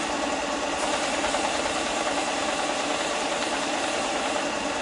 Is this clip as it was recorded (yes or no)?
no